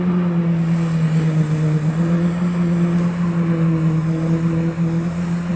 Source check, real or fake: real